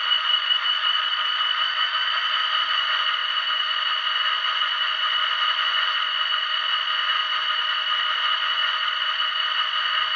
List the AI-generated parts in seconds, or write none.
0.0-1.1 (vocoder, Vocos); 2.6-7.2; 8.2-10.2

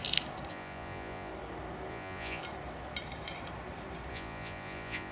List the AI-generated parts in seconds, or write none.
0.5-1.3 (vocoder, Vocos); 1.9-2.4; 4.1-5.1

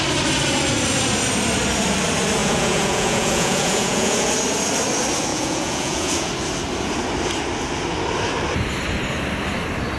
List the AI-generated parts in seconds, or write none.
2.4-4.3 (vocoder, Vocos); 5.3-6.3

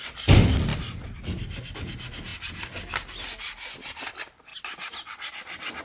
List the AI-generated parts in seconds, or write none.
none

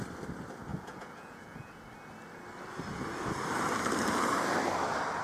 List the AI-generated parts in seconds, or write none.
0.7-1.8 (vocoder, Vocos)